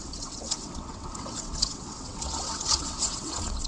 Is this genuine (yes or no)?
no